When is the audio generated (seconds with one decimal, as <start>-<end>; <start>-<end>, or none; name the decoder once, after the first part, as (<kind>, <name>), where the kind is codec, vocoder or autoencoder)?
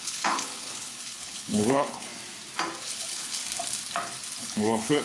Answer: 0.0-2.1 (codec, HILCodec); 2.8-3.4; 4.4-5.0